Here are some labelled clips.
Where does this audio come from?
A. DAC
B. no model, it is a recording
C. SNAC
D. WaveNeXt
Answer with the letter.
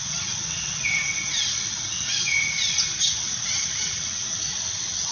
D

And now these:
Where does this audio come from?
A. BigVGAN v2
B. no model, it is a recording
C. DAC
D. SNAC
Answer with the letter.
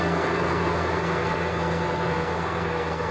D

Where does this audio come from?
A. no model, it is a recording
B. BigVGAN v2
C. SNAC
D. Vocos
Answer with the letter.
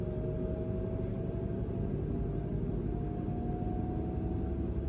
A